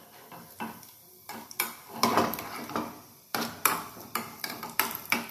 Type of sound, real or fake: real